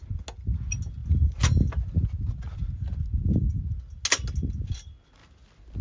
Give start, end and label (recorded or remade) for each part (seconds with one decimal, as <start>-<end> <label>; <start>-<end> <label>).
0.0-5.8 recorded